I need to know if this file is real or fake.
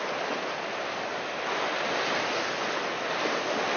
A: real